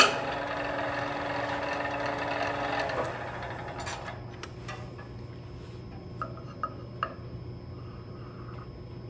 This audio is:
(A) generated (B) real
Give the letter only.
B